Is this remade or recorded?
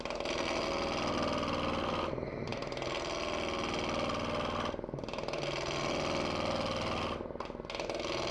recorded